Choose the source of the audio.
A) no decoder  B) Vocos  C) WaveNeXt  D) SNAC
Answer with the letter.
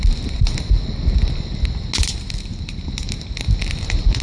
A